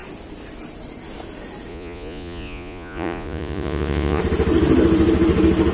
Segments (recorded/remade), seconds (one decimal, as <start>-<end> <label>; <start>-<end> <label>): 0.0-1.7 recorded; 1.7-4.2 remade; 4.2-5.7 recorded